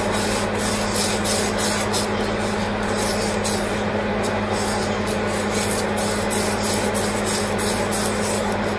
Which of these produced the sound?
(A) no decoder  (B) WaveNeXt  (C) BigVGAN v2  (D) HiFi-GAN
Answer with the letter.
A